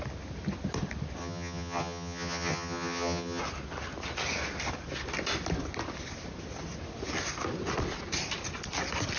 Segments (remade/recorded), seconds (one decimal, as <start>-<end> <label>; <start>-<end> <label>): 0.0-1.2 recorded; 1.2-3.4 remade; 3.4-9.2 recorded